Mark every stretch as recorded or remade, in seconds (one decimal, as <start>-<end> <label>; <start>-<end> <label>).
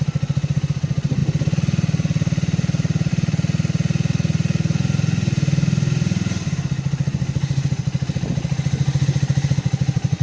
0.0-10.2 recorded